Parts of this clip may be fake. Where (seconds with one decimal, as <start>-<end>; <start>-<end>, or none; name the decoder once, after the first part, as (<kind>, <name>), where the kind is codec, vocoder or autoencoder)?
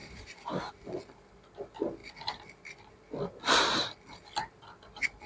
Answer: 0.0-0.7 (vocoder, BigVGAN v2)